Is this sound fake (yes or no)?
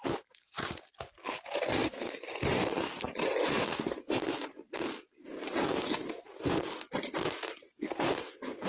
no